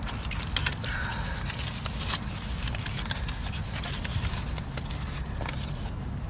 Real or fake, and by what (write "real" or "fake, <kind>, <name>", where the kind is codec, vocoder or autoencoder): real